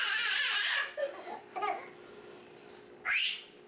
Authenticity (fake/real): real